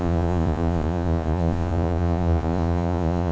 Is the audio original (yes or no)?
no